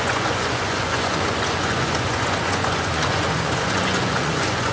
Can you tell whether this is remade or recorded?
remade